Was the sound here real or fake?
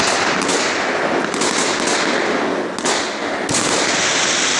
real